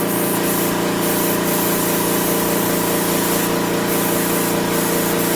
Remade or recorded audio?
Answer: recorded